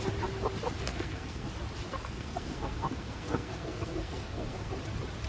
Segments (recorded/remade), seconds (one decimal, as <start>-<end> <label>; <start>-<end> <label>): 0.0-0.9 recorded; 0.9-1.5 remade; 1.5-1.9 recorded; 1.9-4.7 remade; 4.7-5.3 recorded